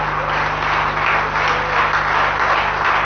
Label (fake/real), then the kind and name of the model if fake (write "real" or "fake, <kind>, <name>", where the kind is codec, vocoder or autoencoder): real